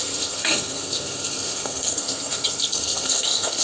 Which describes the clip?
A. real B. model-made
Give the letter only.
B